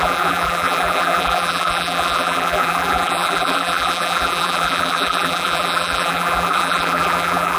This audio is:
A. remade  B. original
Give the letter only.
A